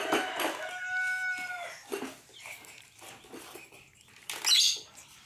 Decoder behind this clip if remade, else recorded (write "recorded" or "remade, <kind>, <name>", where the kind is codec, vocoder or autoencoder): recorded